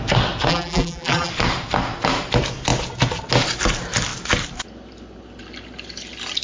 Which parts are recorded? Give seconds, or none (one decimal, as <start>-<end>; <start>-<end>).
0.0-0.5; 1.3-6.4